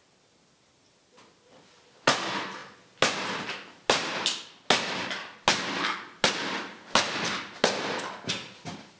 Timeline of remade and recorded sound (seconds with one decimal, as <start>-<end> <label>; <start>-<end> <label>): 0.0-9.0 recorded